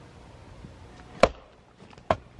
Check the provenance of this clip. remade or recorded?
recorded